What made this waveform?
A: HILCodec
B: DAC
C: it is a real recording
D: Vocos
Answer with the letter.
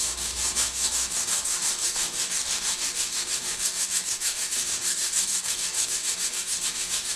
B